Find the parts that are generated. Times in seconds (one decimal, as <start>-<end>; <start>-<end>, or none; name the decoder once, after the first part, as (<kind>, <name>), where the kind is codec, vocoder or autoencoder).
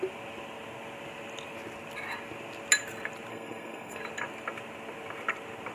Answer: 3.3-4.0 (codec, SNAC)